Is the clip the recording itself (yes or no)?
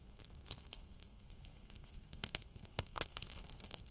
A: no